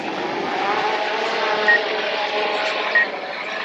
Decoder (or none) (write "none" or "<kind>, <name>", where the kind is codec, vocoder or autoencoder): none